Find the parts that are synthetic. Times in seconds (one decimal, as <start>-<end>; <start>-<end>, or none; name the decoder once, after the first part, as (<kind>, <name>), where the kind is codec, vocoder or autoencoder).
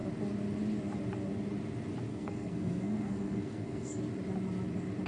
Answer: 2.1-4.0 (codec, SNAC)